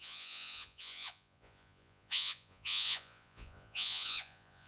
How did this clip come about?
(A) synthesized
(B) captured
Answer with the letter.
A